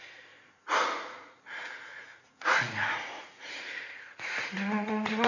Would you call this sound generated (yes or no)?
yes